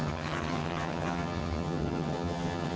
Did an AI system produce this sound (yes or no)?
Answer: yes